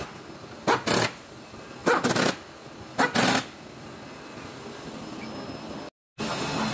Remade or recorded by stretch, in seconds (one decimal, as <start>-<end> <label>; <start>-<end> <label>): 0.0-6.7 recorded